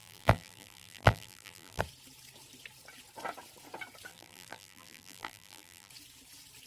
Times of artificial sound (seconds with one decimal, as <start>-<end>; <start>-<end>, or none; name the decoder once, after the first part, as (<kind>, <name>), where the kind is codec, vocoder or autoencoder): 0.0-1.8 (vocoder, BigVGAN v2); 4.1-5.9